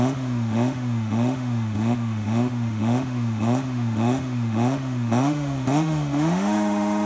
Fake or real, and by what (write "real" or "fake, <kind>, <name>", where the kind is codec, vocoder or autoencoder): fake, autoencoder, DAC-VAE